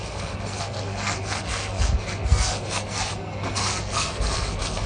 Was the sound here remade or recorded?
remade